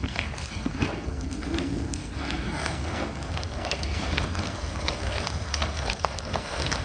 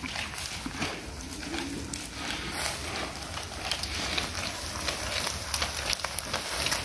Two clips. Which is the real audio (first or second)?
second